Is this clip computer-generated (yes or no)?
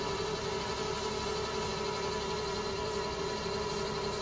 no